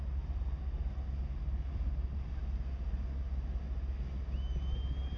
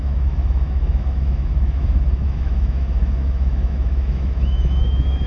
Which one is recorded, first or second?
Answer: first